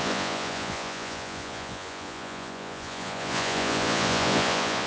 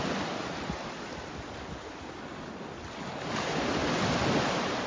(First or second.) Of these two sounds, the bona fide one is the second